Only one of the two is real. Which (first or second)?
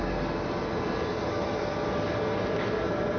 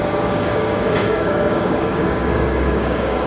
first